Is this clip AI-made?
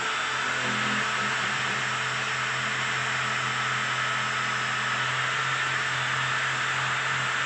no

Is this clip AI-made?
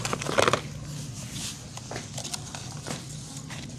no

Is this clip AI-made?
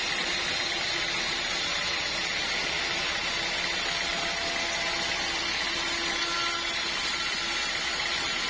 no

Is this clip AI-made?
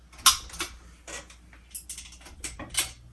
no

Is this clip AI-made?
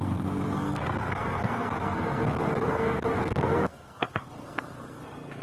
yes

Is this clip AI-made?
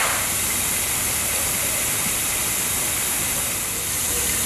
no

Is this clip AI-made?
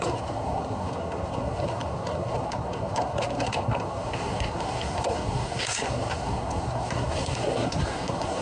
yes